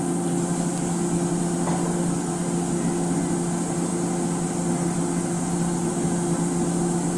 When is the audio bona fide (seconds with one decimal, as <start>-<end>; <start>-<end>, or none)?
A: 0.0-7.2